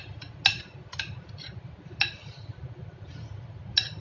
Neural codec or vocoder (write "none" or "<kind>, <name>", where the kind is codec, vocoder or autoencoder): none